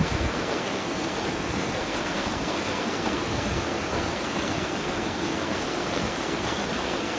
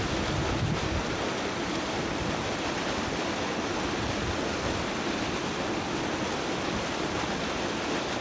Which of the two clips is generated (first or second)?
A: first